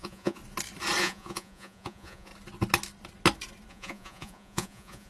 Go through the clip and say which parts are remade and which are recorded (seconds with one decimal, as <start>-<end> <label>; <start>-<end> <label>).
0.0-0.4 remade; 0.4-1.0 recorded; 1.0-2.3 remade; 2.3-3.7 recorded; 3.7-5.1 remade